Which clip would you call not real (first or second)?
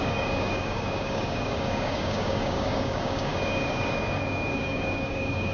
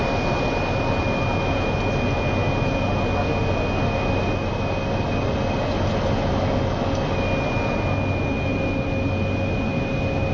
first